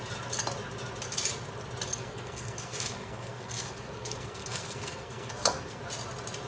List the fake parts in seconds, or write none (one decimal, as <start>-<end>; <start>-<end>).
1.9-5.8